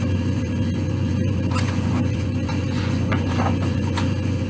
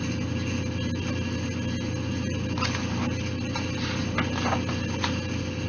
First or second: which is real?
second